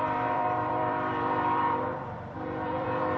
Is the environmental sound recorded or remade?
remade